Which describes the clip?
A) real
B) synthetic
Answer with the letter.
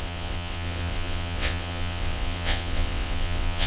B